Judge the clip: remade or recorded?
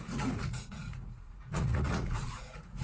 remade